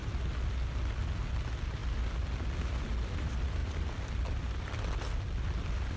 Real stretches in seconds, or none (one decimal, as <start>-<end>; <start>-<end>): 0.0-6.0